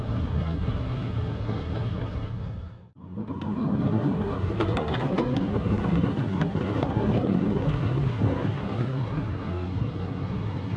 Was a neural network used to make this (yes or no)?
yes